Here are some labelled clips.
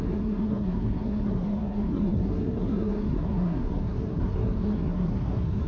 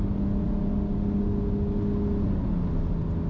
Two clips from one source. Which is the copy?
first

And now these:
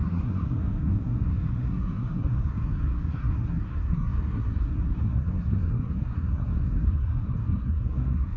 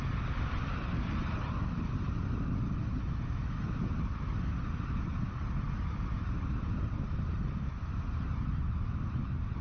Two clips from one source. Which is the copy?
first